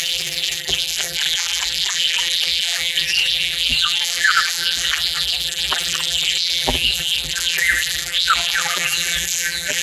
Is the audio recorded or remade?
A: remade